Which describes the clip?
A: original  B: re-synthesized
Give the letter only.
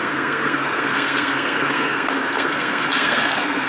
B